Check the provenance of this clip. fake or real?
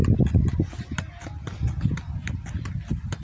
real